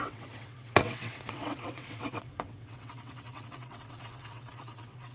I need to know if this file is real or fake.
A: fake